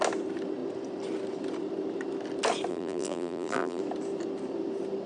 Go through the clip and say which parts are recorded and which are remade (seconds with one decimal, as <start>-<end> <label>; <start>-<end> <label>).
0.0-2.7 recorded; 2.7-3.8 remade; 3.8-5.1 recorded